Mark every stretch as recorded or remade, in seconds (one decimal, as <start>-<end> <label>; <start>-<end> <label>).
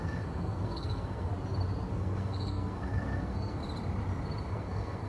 0.0-1.3 remade; 1.3-1.9 recorded; 1.9-3.6 remade; 3.6-4.5 recorded; 4.5-5.1 remade